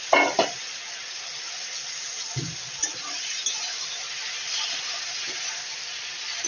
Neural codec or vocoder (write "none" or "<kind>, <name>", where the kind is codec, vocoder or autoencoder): none